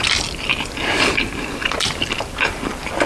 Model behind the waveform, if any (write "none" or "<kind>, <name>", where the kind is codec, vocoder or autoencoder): none